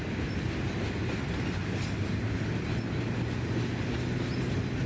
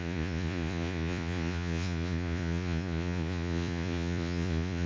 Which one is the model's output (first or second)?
second